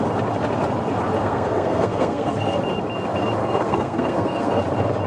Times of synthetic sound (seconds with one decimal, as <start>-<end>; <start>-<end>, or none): 1.2-2.6; 3.4-4.6